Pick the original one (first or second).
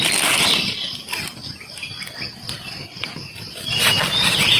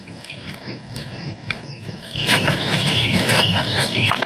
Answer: first